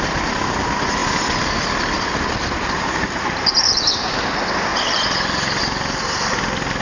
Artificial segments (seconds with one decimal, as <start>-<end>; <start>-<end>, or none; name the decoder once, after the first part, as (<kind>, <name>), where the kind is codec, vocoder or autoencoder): none